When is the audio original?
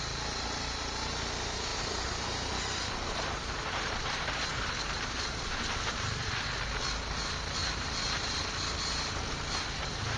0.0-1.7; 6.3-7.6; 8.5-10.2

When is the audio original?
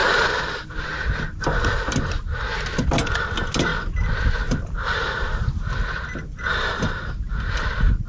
0.0-8.1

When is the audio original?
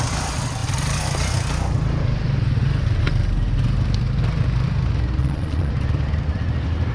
0.0-5.2; 5.7-6.9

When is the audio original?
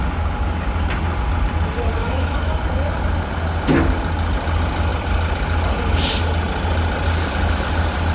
0.0-2.0; 2.5-8.1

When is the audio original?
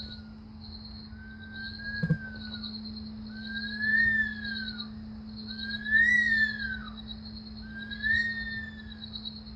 0.0-9.6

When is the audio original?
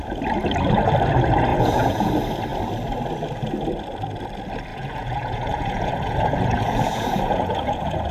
0.0-1.5; 2.1-4.7